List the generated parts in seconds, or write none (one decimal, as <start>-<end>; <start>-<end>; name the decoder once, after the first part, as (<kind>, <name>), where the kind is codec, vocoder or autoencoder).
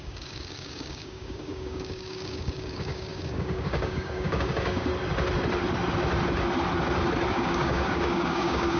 0.0-4.9 (codec, DAC); 7.3-8.8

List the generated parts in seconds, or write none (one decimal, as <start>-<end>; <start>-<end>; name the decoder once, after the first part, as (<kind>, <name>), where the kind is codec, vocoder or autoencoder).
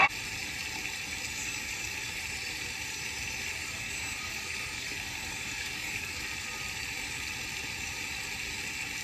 1.4-2.2 (codec, DAC); 3.6-6.2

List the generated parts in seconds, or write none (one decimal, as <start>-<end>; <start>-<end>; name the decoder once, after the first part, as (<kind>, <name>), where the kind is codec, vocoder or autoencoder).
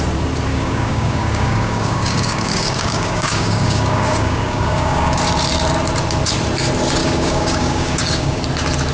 0.5-5.2 (codec, DAC); 7.0-8.4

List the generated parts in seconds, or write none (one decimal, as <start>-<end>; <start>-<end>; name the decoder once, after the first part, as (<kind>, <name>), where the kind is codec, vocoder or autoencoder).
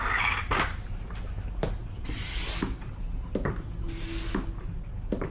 none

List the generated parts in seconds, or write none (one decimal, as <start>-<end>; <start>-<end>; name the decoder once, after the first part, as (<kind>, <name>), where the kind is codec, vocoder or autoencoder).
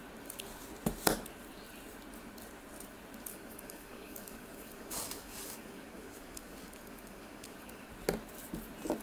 3.3-7.9 (codec, DAC)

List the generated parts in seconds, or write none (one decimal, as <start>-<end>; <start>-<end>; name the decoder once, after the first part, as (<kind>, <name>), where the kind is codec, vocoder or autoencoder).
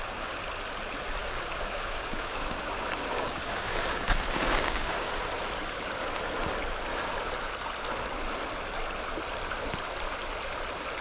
1.2-2.7 (codec, DAC); 3.1-5.1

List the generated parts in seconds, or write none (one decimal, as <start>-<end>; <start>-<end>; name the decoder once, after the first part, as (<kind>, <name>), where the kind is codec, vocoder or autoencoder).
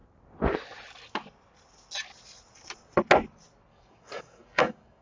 3.7-5.0 (codec, DAC)